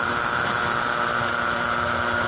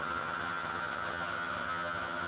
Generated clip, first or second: second